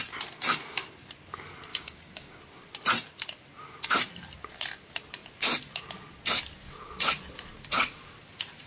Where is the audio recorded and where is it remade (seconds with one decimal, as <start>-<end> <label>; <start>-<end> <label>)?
0.0-1.7 recorded; 1.7-2.4 remade; 2.4-8.7 recorded